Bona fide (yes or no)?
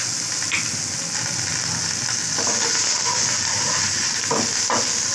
yes